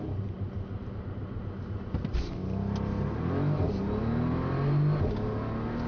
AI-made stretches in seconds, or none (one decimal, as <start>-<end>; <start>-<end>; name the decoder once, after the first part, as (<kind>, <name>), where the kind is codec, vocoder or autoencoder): none